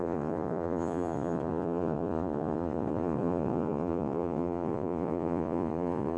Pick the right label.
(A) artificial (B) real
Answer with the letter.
A